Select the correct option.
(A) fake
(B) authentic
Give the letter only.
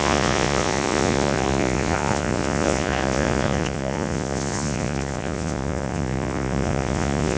A